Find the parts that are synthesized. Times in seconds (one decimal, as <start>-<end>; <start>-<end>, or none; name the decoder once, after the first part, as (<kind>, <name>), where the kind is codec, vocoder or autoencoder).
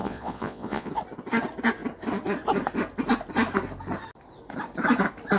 0.0-0.9 (vocoder, Vocos)